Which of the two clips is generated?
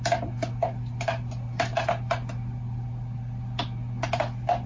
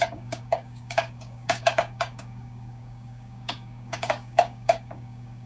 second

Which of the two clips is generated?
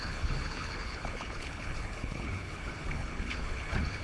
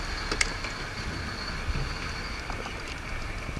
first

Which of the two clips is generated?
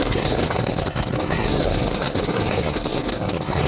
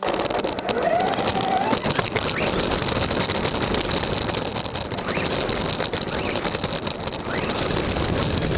first